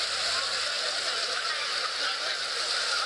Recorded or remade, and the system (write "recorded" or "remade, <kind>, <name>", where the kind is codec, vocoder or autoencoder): recorded